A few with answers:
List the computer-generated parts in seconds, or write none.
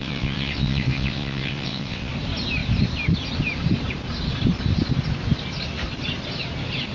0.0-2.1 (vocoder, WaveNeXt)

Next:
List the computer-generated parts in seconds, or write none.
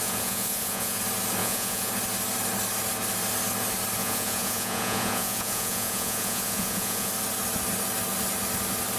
0.0-1.0 (vocoder, Vocos); 1.4-1.9; 4.0-7.1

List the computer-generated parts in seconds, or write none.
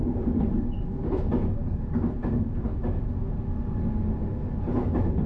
none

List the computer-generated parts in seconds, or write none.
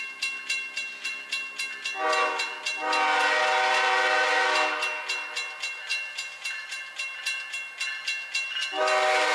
none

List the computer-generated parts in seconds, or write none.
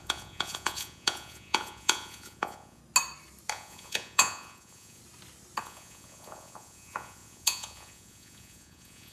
0.0-2.8 (vocoder, Vocos); 3.5-5.0; 5.6-9.1